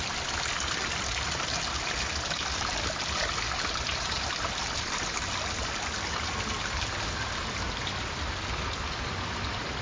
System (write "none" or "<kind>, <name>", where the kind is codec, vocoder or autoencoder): none